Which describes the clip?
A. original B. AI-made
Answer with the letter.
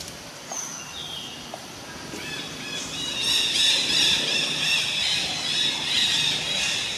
A